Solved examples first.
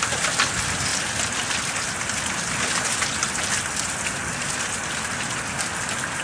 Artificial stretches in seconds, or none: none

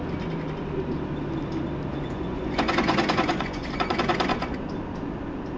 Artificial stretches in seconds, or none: 1.9-4.6 (vocoder, Vocos)

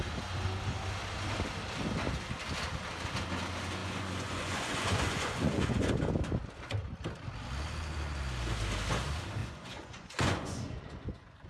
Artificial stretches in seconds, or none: 3.8-5.9 (vocoder, Vocos); 9.4-11.5

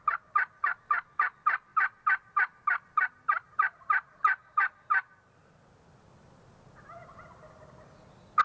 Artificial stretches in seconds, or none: 1.7-3.9 (vocoder, BigVGAN v2); 4.4-5.5